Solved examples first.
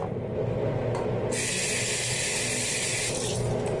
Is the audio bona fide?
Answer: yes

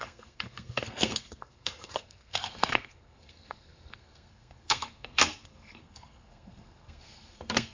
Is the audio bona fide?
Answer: no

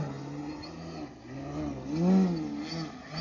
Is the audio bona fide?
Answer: yes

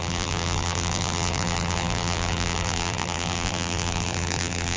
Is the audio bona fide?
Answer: no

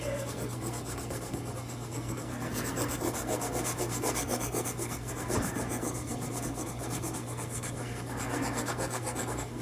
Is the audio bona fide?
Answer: no